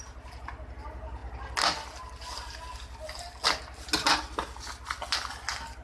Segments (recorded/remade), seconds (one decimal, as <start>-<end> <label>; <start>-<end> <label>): 0.0-5.8 recorded